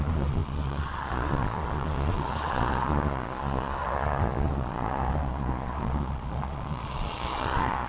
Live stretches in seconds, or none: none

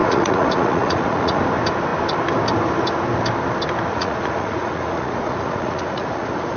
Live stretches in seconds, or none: 1.4-3.9

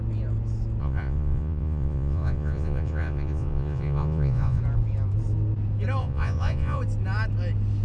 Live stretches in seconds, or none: 0.0-0.8; 4.6-6.0; 6.8-7.8